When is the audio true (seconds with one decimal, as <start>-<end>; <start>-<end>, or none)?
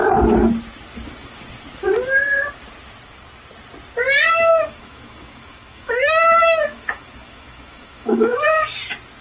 0.0-4.5; 8.4-9.2